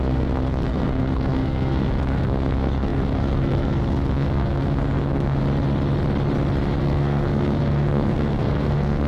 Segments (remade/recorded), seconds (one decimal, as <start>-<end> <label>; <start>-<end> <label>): 0.0-5.4 remade; 5.4-6.8 recorded; 6.8-9.1 remade